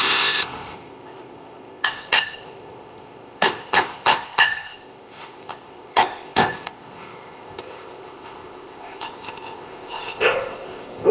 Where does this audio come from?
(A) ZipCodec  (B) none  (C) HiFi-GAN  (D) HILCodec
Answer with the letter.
A